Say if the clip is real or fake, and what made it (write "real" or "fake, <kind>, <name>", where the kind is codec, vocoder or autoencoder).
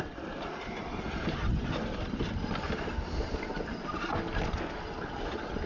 real